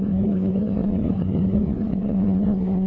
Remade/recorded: remade